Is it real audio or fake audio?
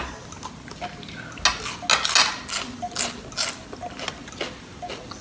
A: real